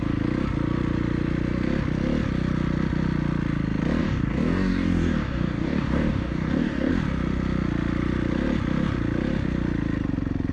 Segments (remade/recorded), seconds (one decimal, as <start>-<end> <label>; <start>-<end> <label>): 0.0-4.0 recorded; 4.0-6.9 remade; 6.9-10.5 recorded